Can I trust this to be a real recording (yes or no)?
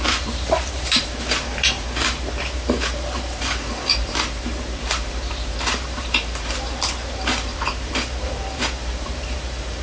no